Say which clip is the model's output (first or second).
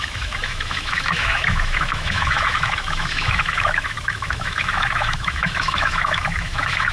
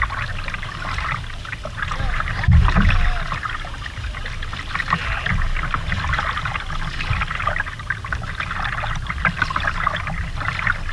first